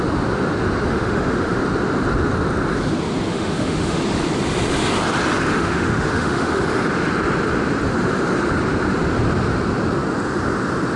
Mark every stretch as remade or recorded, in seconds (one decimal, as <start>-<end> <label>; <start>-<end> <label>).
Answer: 0.0-0.9 recorded; 0.9-1.6 remade; 1.6-3.3 recorded; 3.3-4.0 remade; 4.0-5.5 recorded; 5.5-6.6 remade; 6.6-11.0 recorded